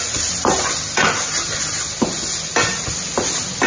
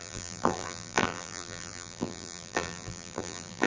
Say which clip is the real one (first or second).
first